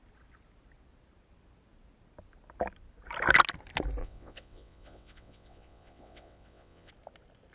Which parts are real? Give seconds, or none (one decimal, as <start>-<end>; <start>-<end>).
0.0-4.0; 6.9-7.5